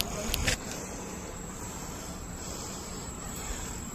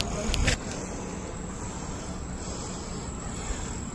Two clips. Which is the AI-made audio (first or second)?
first